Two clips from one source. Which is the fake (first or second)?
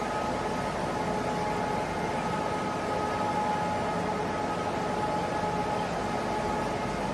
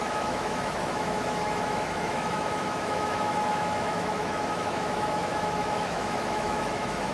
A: second